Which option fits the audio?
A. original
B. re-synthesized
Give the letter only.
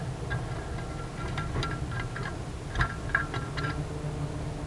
A